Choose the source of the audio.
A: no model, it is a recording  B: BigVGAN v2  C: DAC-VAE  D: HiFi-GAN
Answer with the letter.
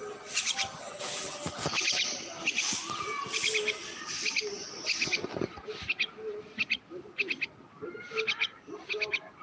A